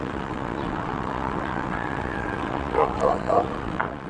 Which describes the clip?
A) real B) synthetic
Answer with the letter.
B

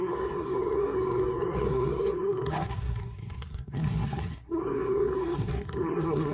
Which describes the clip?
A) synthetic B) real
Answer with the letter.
A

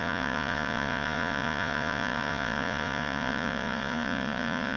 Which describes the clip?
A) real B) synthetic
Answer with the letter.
B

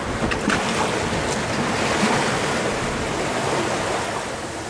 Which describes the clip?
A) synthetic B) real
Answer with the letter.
B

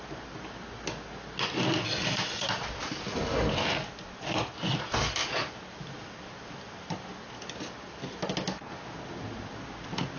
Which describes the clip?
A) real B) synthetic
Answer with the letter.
A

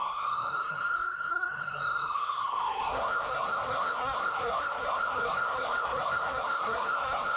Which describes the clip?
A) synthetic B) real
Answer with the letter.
A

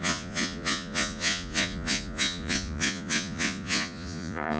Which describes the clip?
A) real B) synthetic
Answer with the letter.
B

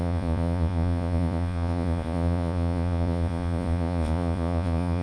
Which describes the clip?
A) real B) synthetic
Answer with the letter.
B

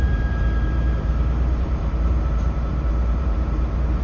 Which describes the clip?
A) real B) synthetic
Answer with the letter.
B